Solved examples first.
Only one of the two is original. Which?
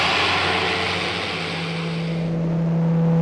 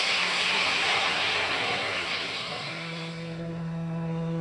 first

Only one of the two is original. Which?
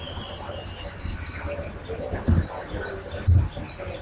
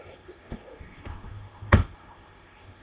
first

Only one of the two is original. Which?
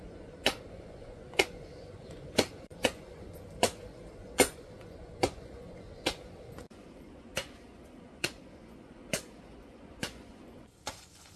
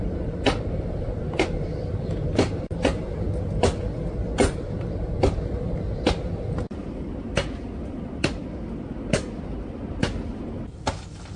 second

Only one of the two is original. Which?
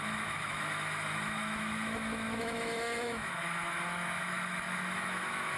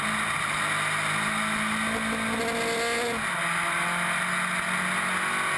second